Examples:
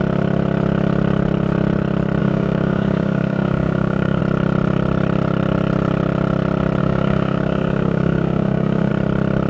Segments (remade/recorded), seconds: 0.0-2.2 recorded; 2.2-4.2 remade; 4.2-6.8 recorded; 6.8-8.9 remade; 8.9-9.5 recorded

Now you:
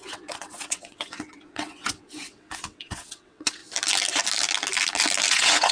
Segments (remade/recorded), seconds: 0.0-3.6 remade; 3.6-5.3 recorded; 5.3-5.7 remade

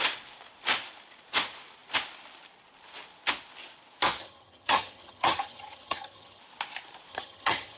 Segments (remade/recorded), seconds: 0.0-4.2 recorded; 4.2-6.4 remade; 6.4-7.1 recorded; 7.1-7.8 remade

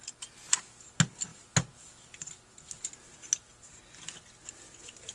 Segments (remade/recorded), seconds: 0.0-5.1 recorded

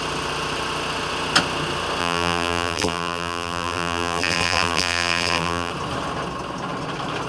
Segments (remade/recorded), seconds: 0.0-2.0 recorded; 2.0-5.7 remade; 5.7-7.3 recorded